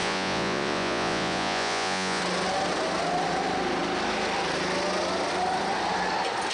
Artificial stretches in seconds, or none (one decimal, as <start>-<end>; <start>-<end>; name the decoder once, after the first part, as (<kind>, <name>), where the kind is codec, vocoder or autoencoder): 0.0-2.2 (vocoder, Vocos)